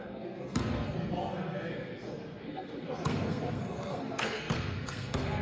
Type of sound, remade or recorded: remade